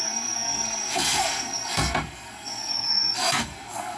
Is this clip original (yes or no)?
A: no